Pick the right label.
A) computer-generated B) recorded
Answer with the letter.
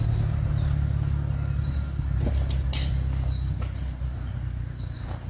B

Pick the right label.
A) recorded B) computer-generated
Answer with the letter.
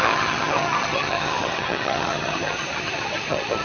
B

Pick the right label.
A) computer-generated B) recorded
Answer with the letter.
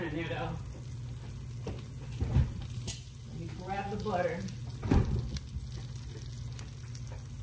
B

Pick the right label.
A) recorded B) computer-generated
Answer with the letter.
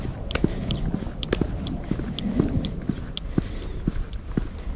A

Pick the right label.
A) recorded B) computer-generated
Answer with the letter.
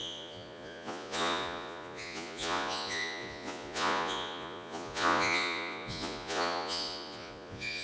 B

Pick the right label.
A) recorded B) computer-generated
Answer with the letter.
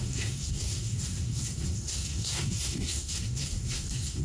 B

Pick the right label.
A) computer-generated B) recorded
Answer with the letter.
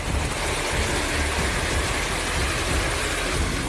B